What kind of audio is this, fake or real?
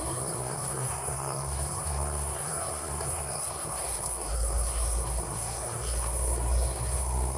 fake